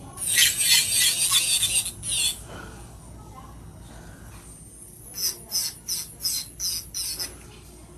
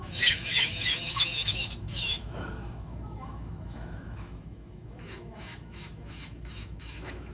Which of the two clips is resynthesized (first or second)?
second